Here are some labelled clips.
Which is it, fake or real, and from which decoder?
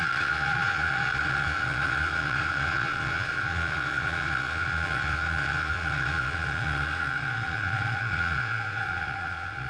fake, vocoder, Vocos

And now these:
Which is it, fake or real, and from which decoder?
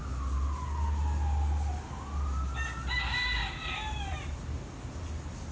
real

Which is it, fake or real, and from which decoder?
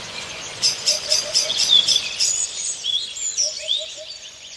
fake, vocoder, Vocos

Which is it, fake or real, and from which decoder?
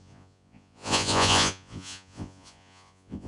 fake, vocoder, Vocos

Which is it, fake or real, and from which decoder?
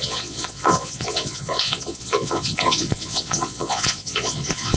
fake, vocoder, Vocos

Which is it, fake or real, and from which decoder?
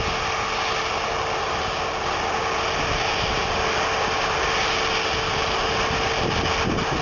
real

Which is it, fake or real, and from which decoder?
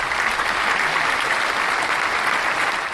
real